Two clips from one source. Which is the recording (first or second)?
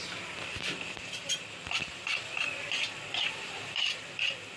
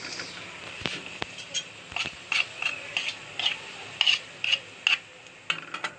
second